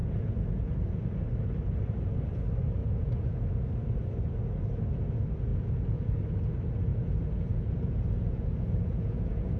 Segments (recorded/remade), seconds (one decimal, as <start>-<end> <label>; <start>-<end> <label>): 0.0-0.7 remade; 0.7-2.8 recorded; 2.8-3.6 remade; 3.6-5.5 recorded; 5.5-6.1 remade; 6.1-6.9 recorded; 6.9-9.6 remade